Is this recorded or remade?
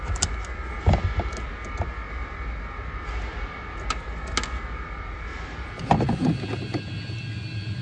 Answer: recorded